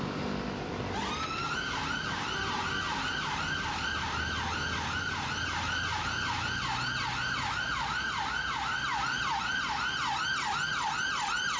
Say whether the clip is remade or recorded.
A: recorded